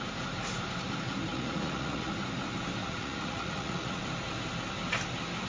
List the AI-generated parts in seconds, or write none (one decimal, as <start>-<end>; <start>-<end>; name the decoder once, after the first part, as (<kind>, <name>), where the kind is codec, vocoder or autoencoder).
1.3-2.1 (vocoder, Vocos); 2.8-4.0